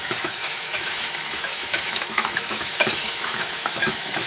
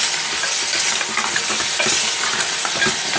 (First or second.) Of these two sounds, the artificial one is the first